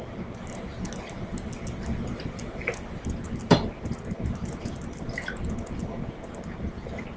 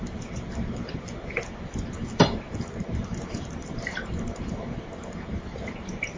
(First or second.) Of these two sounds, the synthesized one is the second